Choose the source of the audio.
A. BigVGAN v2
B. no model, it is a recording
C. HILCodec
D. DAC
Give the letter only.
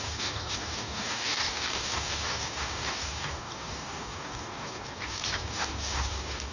D